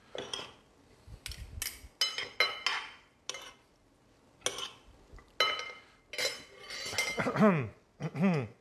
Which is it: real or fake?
real